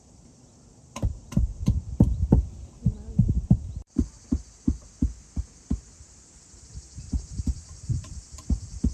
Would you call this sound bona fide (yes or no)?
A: no